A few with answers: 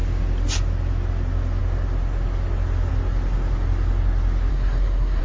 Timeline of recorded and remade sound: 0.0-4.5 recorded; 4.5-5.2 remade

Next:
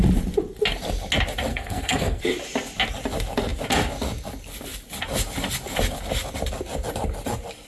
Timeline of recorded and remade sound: 0.0-1.5 recorded; 1.5-2.2 remade; 2.2-7.7 recorded